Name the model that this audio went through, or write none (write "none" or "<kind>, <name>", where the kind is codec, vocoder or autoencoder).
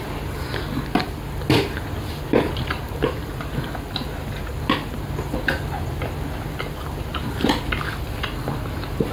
none